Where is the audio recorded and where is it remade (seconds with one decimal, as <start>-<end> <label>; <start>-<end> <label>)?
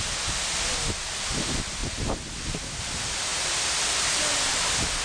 0.0-5.0 recorded